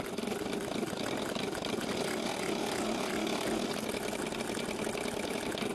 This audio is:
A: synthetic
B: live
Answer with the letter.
B